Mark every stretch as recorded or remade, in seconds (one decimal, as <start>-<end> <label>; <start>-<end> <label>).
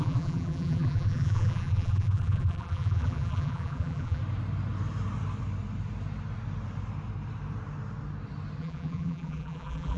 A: 0.0-4.2 remade; 4.2-8.6 recorded; 8.6-10.0 remade